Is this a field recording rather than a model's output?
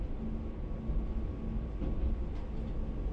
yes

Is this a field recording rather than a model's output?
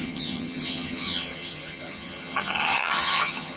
no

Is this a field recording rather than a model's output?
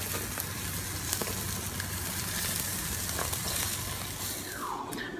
yes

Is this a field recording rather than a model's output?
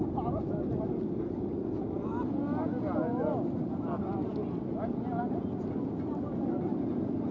yes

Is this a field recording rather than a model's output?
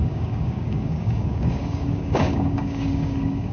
no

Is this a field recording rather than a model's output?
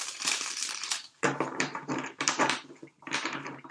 no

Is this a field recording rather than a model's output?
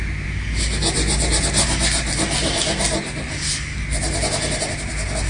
yes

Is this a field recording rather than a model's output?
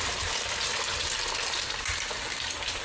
yes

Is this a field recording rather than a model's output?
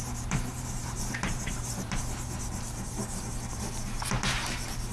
no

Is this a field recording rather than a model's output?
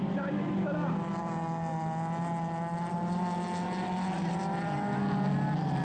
yes